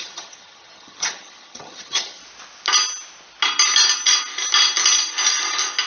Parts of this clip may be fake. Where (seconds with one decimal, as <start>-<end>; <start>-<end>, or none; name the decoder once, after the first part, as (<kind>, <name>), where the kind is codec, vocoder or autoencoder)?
0.0-2.2 (vocoder, HiFi-GAN)